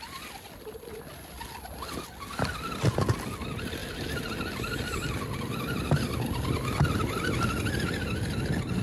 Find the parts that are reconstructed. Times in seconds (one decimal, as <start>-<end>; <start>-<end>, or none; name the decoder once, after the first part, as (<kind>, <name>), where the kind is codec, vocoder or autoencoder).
none